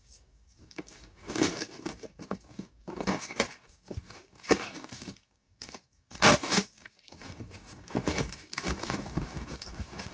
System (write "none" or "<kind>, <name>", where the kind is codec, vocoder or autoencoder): codec, DAC